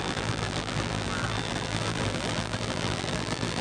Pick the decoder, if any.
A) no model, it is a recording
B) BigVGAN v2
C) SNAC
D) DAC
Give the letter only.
B